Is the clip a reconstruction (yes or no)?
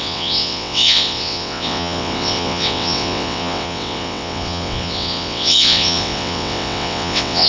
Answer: yes